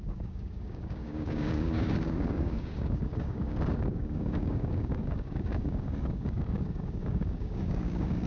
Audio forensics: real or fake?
fake